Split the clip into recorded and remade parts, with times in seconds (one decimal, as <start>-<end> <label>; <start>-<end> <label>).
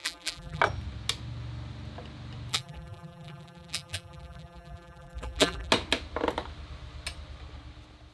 0.0-0.6 remade; 0.6-2.5 recorded; 2.5-5.7 remade; 5.7-8.1 recorded